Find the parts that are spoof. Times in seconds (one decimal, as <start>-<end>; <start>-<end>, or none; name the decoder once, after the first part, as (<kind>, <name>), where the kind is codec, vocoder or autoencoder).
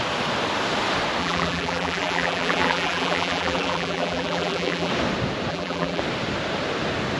1.2-4.9 (vocoder, BigVGAN v2); 5.5-6.0